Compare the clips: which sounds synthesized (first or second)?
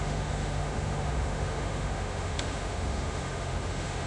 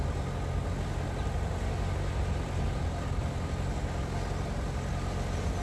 first